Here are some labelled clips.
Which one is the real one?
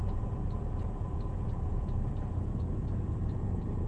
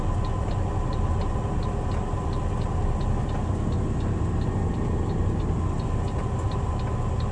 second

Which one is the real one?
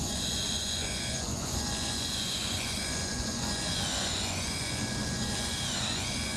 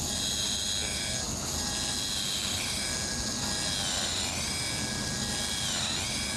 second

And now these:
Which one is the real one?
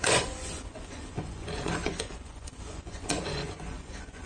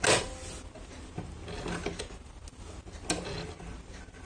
second